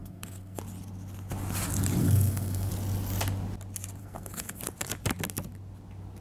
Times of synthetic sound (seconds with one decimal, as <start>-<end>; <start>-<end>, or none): 0.0-0.6; 2.0-2.7; 4.0-4.6